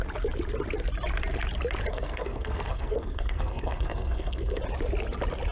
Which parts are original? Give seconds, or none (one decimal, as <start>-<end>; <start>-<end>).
0.0-1.9; 4.6-5.5